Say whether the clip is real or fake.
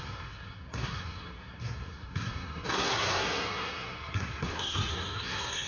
fake